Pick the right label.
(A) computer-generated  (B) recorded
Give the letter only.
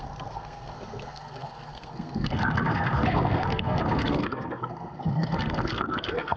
A